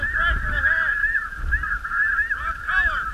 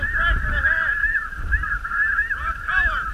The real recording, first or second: first